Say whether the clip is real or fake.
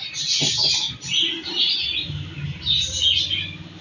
real